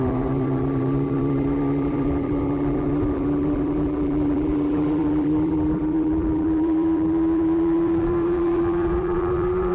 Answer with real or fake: fake